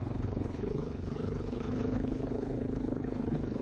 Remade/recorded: remade